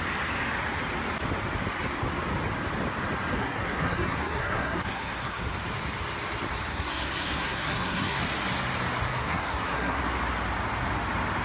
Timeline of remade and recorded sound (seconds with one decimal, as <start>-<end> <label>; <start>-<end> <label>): 0.0-3.4 recorded; 3.4-5.5 remade; 5.5-6.7 recorded; 6.7-8.2 remade; 8.2-9.1 recorded; 9.1-10.0 remade; 10.0-11.4 recorded